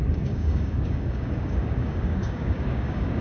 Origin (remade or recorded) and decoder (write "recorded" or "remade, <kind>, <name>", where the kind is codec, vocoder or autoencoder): remade, codec, DAC